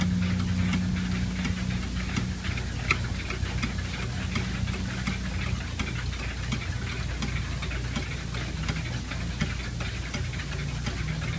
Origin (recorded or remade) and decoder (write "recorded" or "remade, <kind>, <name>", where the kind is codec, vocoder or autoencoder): recorded